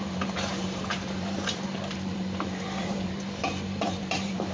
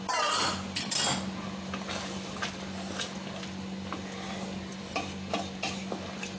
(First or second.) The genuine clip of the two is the second